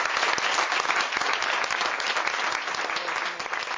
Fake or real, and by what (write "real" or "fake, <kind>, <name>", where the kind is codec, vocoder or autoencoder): real